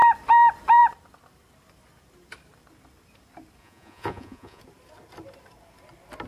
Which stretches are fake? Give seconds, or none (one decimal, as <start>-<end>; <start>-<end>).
3.6-4.6